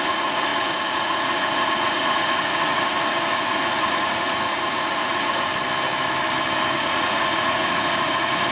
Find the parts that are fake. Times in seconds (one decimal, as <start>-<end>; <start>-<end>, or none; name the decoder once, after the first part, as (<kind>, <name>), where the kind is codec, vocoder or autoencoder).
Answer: 0.0-5.5 (vocoder, Vocos); 6.7-8.5